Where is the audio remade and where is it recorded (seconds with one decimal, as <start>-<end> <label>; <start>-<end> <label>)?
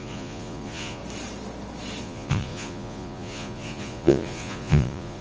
0.0-1.0 remade; 1.0-2.0 recorded; 2.0-5.2 remade